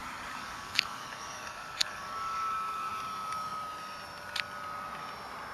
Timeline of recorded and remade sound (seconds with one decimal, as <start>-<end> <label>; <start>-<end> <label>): 0.0-2.9 remade; 2.9-5.5 recorded